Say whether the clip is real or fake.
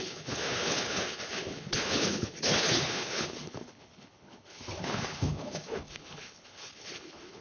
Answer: fake